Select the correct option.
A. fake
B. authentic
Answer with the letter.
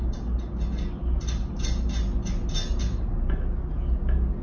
B